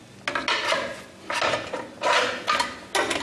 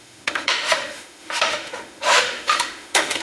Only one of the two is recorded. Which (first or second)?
first